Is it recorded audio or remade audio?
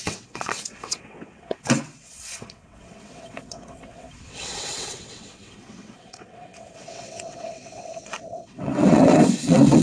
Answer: remade